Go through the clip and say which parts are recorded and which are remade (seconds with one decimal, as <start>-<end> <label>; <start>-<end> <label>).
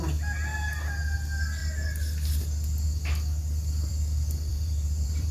0.0-4.5 recorded; 4.5-5.3 remade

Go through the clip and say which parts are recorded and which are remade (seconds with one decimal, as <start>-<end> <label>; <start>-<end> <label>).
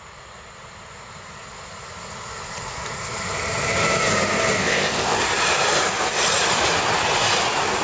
0.0-4.6 recorded; 4.6-5.2 remade; 5.2-7.8 recorded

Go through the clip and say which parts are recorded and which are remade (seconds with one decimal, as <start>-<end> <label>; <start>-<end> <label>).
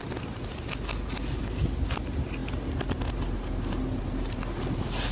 0.0-5.1 recorded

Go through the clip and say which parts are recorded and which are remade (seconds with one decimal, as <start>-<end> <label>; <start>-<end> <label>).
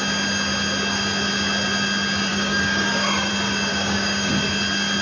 0.0-2.3 recorded; 2.3-3.3 remade; 3.3-3.7 recorded; 3.7-4.3 remade; 4.3-5.0 recorded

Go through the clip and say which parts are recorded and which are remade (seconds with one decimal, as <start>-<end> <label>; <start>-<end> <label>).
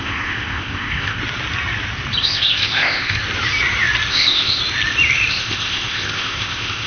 0.0-1.2 remade; 1.2-2.2 recorded; 2.2-3.2 remade; 3.2-4.1 recorded; 4.1-4.6 remade; 4.6-5.3 recorded; 5.3-6.9 remade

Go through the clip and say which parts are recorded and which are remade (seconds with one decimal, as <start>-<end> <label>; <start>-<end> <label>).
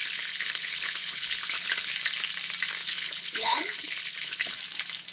0.0-1.9 remade; 1.9-2.8 recorded; 2.8-4.5 remade; 4.5-5.1 recorded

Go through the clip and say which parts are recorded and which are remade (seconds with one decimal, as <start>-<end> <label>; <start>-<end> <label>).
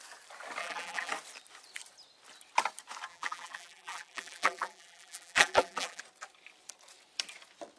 0.0-0.6 recorded; 0.6-1.1 remade; 1.1-3.1 recorded; 3.1-6.0 remade; 6.0-7.8 recorded